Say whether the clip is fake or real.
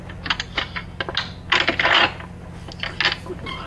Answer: real